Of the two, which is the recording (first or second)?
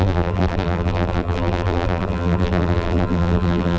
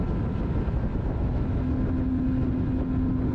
second